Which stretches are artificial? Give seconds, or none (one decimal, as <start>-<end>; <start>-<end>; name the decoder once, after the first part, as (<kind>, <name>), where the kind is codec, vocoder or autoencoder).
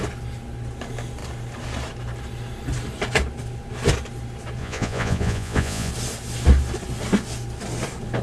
4.6-5.9 (vocoder, Vocos)